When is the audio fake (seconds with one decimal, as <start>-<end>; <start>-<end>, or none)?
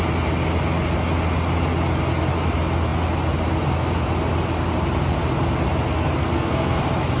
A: 6.2-6.8